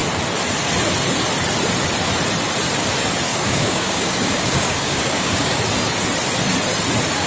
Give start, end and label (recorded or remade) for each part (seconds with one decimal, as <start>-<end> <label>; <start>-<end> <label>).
0.0-3.3 recorded; 3.3-5.6 remade; 5.6-7.3 recorded